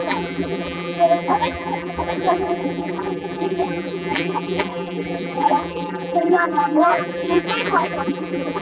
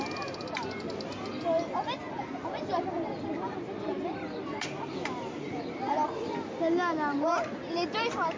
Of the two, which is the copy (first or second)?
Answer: first